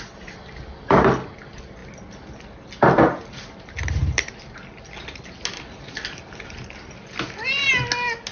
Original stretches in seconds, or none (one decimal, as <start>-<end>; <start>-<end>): 0.0-8.3